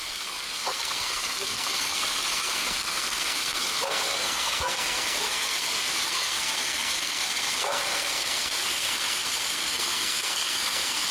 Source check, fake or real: fake